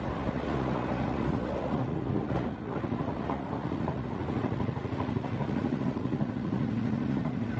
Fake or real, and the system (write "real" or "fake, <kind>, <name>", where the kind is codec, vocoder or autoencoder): fake, vocoder, Vocos